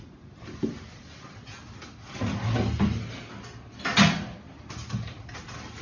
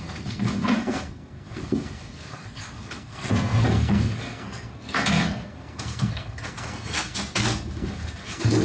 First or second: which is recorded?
first